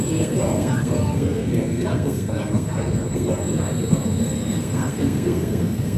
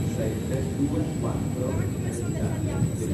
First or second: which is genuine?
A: second